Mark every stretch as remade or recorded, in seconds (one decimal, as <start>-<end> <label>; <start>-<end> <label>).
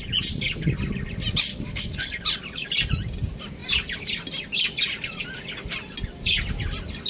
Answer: 0.0-1.5 recorded; 1.5-2.2 remade; 2.2-7.1 recorded